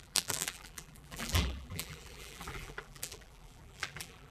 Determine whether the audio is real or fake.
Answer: fake